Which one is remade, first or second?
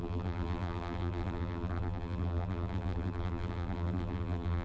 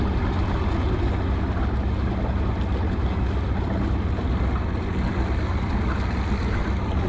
first